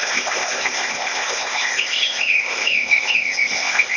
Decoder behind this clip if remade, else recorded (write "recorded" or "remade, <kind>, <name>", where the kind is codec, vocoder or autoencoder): remade, codec, ZipCodec